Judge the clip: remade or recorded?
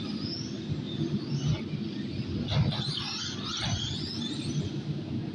recorded